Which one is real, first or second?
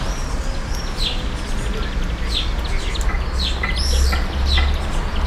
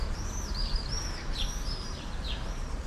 first